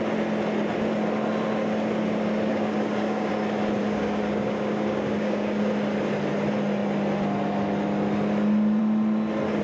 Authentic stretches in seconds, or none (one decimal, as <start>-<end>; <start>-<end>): 0.0-2.5; 3.3-3.8; 5.7-9.6